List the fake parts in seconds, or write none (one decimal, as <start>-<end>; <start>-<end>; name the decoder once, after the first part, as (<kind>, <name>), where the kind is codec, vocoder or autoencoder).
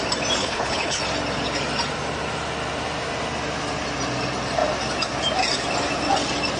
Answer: 0.4-1.0 (codec, HILCodec)